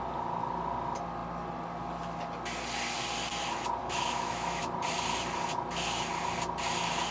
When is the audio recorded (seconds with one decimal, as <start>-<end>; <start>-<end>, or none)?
0.0-3.8; 4.6-7.1